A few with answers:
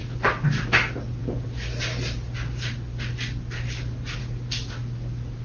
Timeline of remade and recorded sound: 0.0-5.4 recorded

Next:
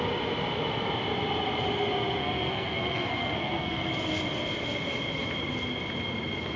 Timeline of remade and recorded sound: 0.0-2.2 recorded; 2.2-3.9 remade; 3.9-6.6 recorded

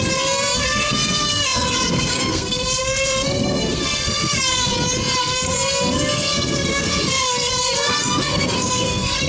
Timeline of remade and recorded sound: 0.0-4.7 remade; 4.7-5.2 recorded; 5.2-9.3 remade

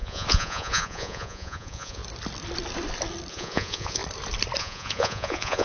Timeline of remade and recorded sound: 0.0-2.0 remade; 2.0-3.3 recorded; 3.3-4.0 remade; 4.0-4.6 recorded; 4.6-5.6 remade